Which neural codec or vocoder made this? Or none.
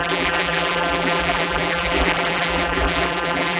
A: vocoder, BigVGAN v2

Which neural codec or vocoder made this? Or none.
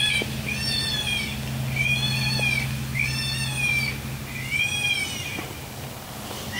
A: none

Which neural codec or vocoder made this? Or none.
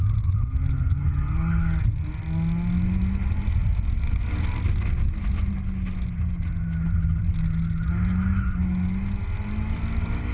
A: none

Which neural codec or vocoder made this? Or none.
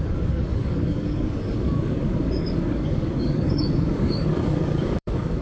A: codec, DAC